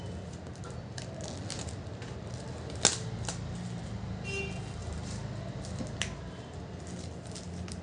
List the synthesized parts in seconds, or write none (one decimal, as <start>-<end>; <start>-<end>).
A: 4.8-5.3